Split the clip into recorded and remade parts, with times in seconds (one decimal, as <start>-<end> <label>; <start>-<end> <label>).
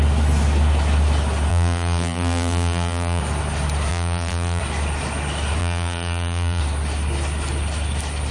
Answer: 0.0-1.5 recorded; 1.5-3.2 remade; 3.2-3.9 recorded; 3.9-4.6 remade; 4.6-5.6 recorded; 5.6-6.6 remade; 6.6-8.3 recorded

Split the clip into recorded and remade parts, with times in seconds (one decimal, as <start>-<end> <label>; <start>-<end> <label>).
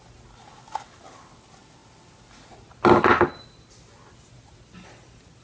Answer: 0.0-5.4 recorded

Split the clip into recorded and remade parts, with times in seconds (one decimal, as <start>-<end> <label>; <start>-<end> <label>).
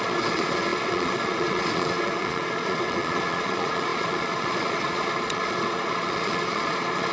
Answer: 0.0-7.1 remade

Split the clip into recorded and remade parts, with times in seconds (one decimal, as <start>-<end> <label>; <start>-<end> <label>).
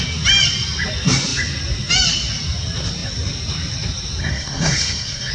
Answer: 0.0-4.2 recorded; 4.2-5.3 remade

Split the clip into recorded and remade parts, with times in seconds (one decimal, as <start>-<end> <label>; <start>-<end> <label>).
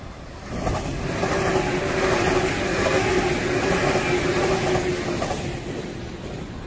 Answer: 0.0-2.7 recorded; 2.7-3.2 remade; 3.2-6.7 recorded